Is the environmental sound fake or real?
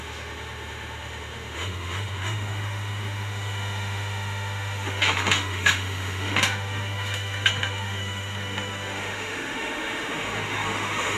fake